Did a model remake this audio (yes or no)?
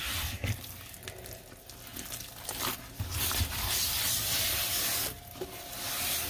no